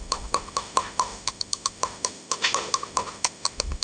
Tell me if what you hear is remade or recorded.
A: remade